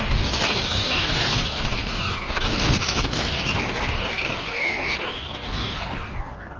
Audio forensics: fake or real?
fake